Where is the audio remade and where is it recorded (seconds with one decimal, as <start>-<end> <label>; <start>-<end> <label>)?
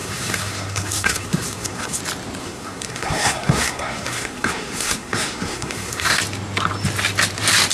0.0-2.0 remade; 2.0-2.4 recorded; 2.4-6.2 remade; 6.2-7.7 recorded